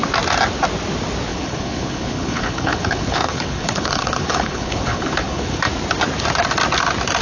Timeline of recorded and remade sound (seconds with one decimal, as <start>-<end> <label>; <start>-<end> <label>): 0.0-1.3 recorded; 1.3-5.6 remade; 5.6-7.2 recorded